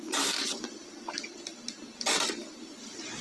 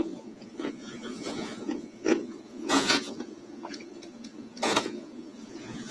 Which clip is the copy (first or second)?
second